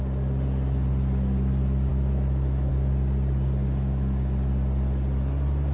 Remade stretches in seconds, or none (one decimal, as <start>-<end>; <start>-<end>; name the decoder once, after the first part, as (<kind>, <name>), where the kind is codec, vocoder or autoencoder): 1.9-2.7 (autoencoder, DAC-VAE)